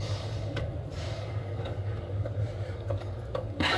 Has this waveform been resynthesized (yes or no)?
yes